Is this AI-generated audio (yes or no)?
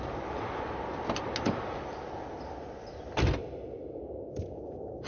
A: no